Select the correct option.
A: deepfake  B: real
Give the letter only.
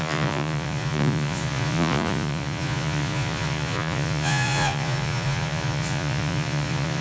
A